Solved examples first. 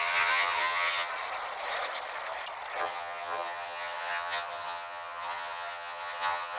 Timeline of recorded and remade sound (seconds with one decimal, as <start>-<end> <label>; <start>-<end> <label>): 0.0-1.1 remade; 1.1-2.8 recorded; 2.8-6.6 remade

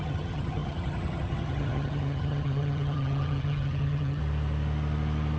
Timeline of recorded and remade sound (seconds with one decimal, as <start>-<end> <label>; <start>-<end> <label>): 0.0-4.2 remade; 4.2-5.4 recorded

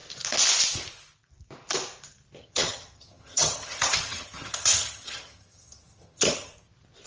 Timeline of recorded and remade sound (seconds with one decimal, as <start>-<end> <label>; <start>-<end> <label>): 0.0-2.4 recorded; 2.4-6.5 remade; 6.5-7.1 recorded

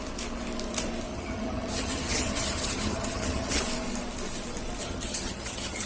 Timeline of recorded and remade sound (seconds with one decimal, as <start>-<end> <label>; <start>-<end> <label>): 0.0-1.1 recorded; 1.1-3.6 remade; 3.6-4.8 recorded; 4.8-5.9 remade

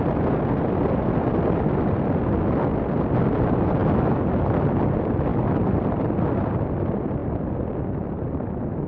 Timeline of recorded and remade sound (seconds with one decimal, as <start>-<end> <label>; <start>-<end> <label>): 0.0-8.9 recorded

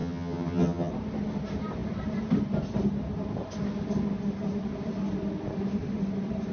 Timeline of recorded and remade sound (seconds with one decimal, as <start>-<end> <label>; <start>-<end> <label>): 0.0-0.9 remade; 0.9-6.5 recorded

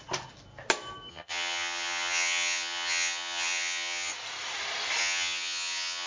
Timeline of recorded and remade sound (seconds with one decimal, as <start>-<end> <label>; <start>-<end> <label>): 0.0-1.1 recorded; 1.1-4.1 remade; 4.1-5.0 recorded; 5.0-6.1 remade